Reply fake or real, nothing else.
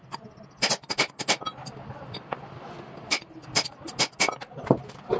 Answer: real